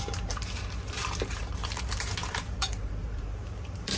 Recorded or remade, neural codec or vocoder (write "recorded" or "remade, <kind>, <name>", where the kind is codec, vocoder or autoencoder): remade, vocoder, BigVGAN v2